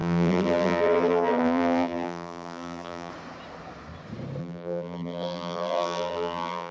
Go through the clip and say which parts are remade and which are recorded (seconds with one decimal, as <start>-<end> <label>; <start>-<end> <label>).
0.0-3.1 remade; 3.1-4.4 recorded; 4.4-6.7 remade